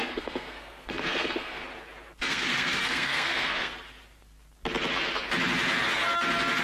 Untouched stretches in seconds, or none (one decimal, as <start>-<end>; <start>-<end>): 1.6-2.2; 3.7-6.6